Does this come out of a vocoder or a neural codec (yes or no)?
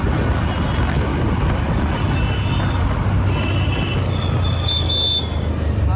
no